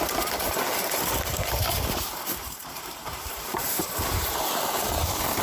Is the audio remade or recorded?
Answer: remade